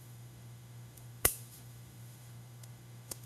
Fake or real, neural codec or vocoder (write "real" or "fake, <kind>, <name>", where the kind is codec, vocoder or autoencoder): fake, autoencoder, DAC-VAE